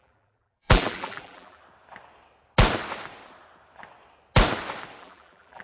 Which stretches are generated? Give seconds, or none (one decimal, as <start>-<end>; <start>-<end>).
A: 0.0-1.6; 5.0-5.6

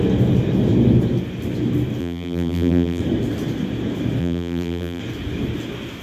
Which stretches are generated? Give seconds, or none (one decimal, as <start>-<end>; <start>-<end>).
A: 2.0-3.0; 4.2-5.0

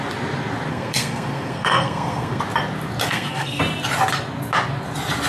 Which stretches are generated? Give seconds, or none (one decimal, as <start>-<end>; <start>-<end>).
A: 0.7-2.4; 3.1-3.6

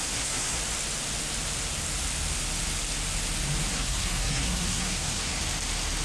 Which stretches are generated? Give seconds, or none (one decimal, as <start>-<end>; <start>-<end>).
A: 0.0-0.6; 3.7-5.4